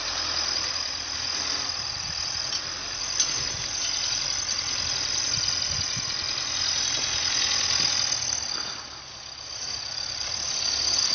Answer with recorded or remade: recorded